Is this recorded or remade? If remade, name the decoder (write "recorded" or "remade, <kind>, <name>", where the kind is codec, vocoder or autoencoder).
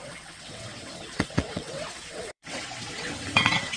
remade, vocoder, WaveNeXt